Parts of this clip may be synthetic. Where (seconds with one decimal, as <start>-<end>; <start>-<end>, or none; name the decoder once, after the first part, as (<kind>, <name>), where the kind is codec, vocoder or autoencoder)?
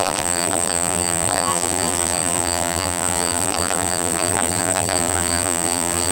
0.0-6.1 (vocoder, BigVGAN v2)